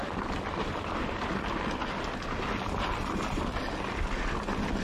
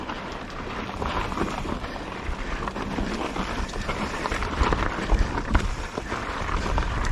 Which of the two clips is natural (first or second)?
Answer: first